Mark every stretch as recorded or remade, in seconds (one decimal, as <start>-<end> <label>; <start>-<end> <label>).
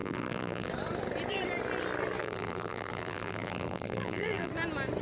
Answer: 0.0-0.7 remade; 0.7-2.2 recorded; 2.2-4.5 remade; 4.5-5.0 recorded